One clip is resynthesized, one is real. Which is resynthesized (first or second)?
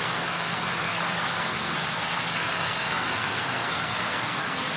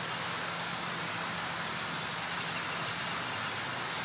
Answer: first